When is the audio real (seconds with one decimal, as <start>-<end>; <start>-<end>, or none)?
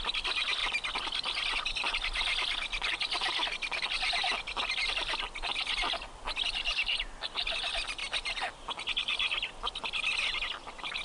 0.0-11.0